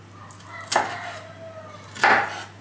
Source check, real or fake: real